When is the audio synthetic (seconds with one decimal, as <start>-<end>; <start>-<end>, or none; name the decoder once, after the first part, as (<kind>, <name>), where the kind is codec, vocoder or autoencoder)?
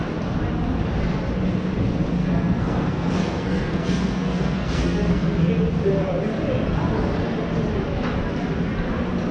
2.2-5.5 (codec, SNAC)